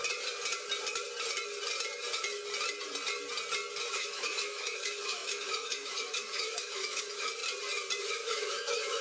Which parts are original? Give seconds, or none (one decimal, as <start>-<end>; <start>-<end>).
0.0-3.9; 7.4-8.0